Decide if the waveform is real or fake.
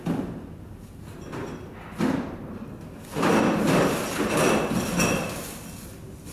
real